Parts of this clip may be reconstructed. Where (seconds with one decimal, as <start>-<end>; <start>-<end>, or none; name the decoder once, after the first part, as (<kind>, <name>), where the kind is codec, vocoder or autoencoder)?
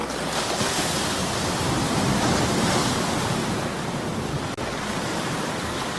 0.6-1.2 (vocoder, BigVGAN v2); 4.8-6.0